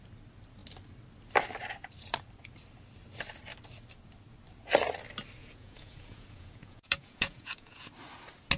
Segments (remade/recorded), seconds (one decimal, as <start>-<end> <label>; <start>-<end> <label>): 0.0-5.4 recorded; 5.4-7.9 remade; 7.9-8.6 recorded